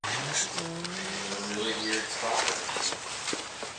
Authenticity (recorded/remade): recorded